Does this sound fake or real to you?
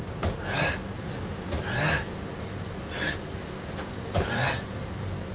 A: real